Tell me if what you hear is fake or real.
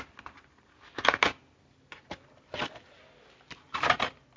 real